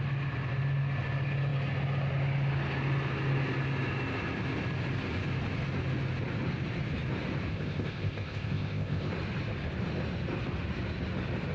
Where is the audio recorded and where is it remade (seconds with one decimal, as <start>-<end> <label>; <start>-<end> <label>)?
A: 0.0-7.5 recorded; 7.5-9.1 remade; 9.1-11.5 recorded